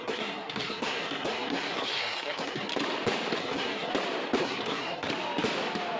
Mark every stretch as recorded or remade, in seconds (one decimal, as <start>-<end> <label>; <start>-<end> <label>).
0.0-2.7 remade; 2.7-3.4 recorded; 3.4-3.9 remade; 3.9-4.4 recorded; 4.4-5.1 remade; 5.1-6.0 recorded